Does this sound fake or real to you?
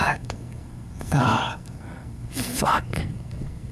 fake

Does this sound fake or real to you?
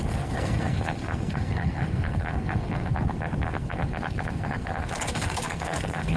fake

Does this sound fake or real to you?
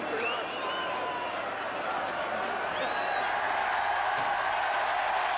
real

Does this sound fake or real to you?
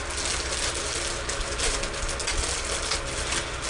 real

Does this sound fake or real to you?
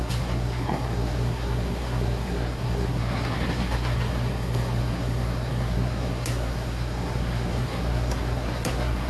fake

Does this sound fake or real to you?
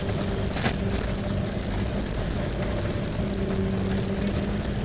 real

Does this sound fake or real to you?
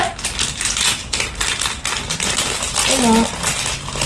real